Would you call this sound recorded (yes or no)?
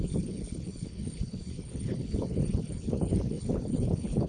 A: no